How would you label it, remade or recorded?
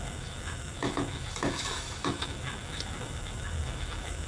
remade